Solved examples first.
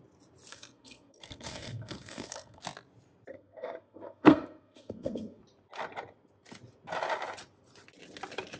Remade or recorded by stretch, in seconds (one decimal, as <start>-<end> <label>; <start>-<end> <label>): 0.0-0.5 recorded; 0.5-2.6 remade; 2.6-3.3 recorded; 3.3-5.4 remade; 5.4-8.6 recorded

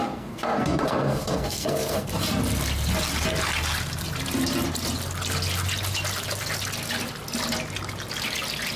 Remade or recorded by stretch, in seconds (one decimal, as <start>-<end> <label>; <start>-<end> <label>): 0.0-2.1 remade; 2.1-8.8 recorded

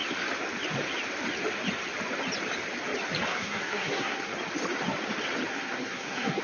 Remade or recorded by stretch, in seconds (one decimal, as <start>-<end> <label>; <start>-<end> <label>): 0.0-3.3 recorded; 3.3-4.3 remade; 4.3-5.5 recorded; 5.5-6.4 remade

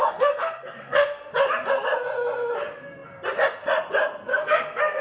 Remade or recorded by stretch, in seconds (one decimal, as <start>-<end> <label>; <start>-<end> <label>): 0.0-1.3 remade; 1.3-4.3 recorded; 4.3-5.0 remade

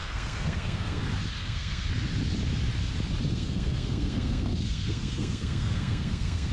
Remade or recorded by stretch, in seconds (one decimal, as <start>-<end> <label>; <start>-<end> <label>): 0.0-1.0 remade; 1.0-1.4 recorded; 1.4-1.9 remade; 1.9-3.3 recorded; 3.3-6.5 remade

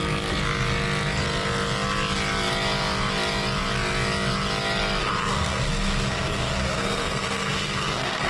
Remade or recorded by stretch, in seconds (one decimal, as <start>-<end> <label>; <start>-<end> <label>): 0.0-5.0 recorded; 5.0-8.3 remade

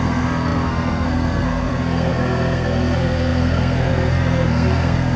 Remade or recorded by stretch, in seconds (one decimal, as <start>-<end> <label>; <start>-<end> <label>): 0.0-5.2 remade

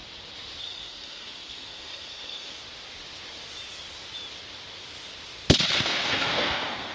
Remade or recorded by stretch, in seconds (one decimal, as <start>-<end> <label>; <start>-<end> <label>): 0.0-0.6 recorded; 0.6-2.6 remade; 2.6-5.8 recorded; 5.8-6.9 remade